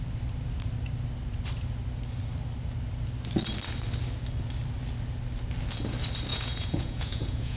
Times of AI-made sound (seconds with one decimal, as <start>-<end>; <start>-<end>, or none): 6.3-7.6